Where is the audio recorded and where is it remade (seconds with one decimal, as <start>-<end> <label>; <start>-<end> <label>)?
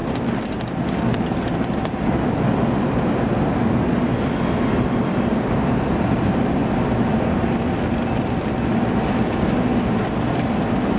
0.0-0.5 recorded; 0.5-6.6 remade; 6.6-7.8 recorded; 7.8-11.0 remade